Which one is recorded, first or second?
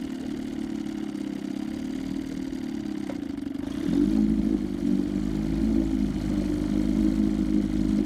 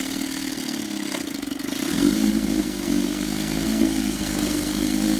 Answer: first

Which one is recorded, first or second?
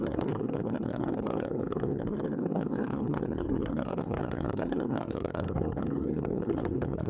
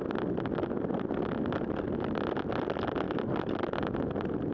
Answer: second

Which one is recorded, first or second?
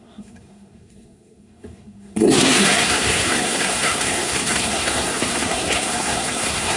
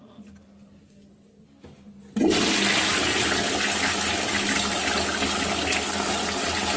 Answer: second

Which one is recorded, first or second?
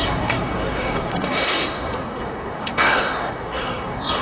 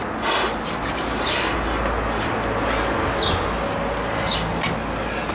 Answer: second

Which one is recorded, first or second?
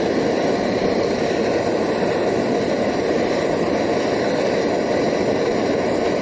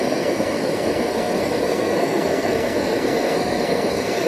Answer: first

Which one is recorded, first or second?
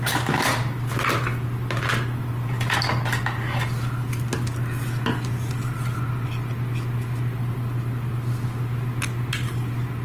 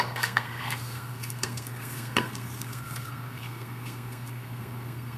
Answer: first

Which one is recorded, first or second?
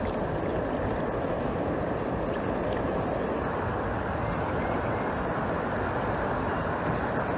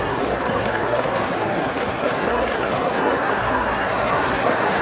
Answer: first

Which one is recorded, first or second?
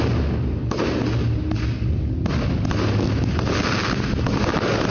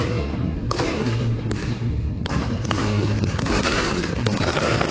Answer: first